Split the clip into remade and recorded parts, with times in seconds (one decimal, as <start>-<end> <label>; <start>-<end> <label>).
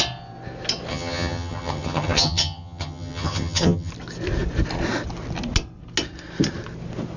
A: 0.0-0.9 recorded; 0.9-3.9 remade; 3.9-7.2 recorded